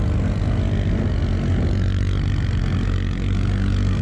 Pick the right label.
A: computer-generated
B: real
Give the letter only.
B